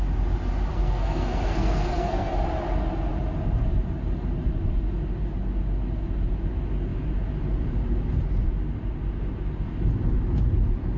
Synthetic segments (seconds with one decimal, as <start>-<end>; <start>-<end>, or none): 0.7-2.3